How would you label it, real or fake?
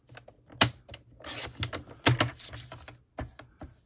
real